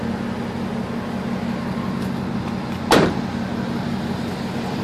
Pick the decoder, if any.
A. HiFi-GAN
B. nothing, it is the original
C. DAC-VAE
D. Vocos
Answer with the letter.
B